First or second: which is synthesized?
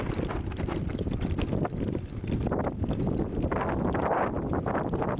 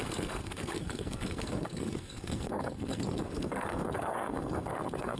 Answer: second